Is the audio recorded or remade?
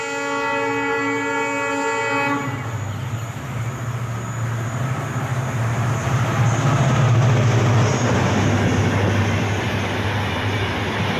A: recorded